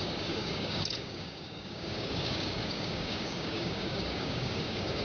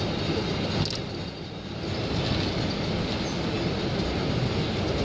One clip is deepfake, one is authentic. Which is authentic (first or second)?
second